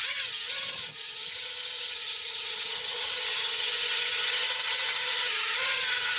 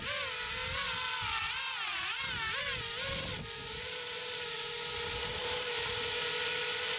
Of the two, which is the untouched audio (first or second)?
second